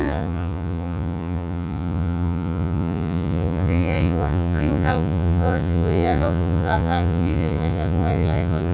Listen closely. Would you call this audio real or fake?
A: fake